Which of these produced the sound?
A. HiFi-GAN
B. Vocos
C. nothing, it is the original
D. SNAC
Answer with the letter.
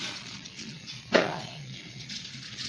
B